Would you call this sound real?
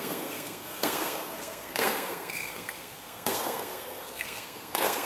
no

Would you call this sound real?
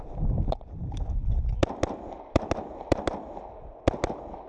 yes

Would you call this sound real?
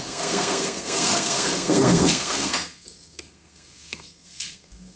no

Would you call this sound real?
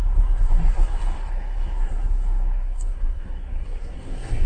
no